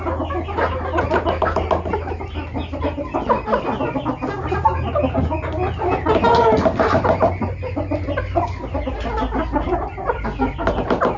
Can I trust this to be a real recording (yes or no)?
yes